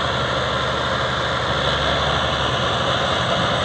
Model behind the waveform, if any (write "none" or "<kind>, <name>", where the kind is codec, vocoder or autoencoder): none